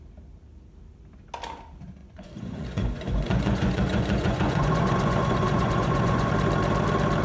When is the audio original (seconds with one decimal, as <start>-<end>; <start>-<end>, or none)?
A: 0.0-2.0; 6.3-7.2